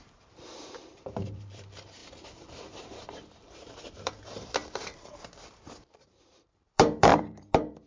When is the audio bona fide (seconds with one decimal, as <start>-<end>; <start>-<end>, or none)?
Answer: none